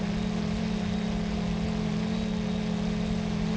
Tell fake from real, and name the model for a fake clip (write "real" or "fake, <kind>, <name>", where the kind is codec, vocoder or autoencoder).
real